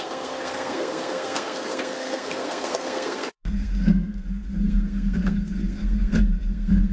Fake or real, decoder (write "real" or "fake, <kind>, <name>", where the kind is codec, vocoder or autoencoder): fake, codec, SNAC